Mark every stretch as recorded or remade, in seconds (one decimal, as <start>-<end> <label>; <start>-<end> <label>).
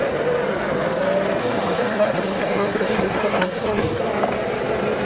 0.0-1.4 recorded; 1.4-4.0 remade; 4.0-5.1 recorded